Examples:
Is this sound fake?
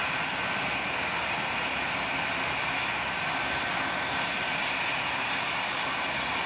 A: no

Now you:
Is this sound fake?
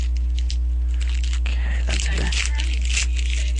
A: no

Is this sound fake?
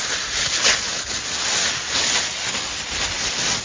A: no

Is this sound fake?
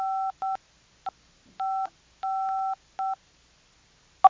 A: no